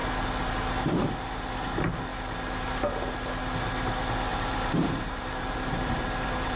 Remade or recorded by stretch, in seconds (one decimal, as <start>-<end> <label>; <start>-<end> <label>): 0.0-4.3 recorded; 4.3-6.6 remade